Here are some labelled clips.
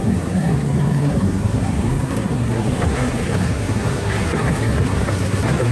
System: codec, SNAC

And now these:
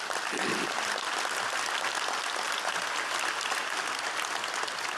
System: none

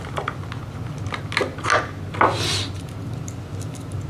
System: none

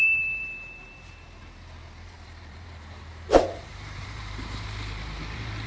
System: vocoder, BigVGAN v2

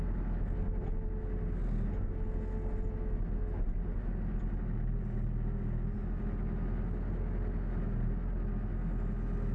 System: none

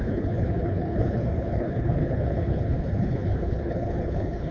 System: codec, HILCodec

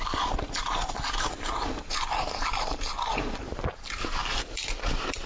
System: none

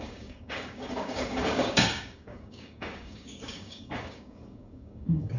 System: codec, DAC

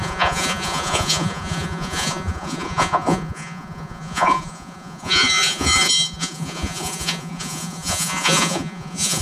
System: vocoder, Vocos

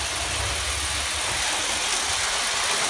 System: none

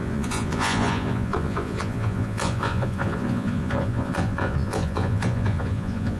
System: vocoder, Vocos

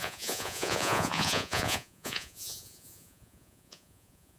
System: vocoder, Vocos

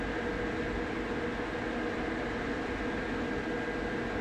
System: none